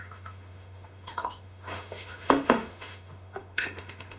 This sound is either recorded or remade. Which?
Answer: remade